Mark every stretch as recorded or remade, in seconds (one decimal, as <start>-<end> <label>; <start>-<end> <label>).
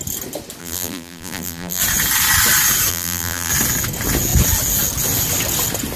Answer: 0.0-0.6 recorded; 0.6-1.8 remade; 1.8-2.9 recorded; 2.9-3.5 remade; 3.5-6.0 recorded